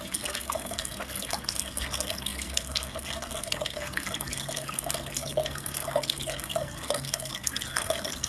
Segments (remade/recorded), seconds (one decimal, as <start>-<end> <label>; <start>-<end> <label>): 0.0-8.3 remade